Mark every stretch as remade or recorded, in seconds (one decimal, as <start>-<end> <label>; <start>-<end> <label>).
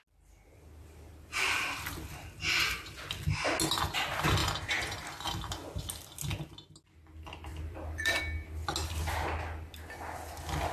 0.0-7.5 recorded; 7.5-8.2 remade; 8.2-10.7 recorded